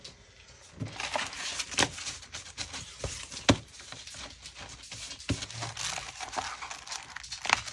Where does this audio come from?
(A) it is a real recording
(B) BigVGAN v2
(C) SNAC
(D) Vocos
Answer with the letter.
A